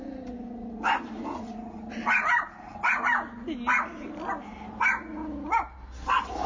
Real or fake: real